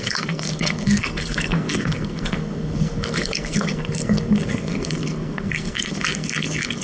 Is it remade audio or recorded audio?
remade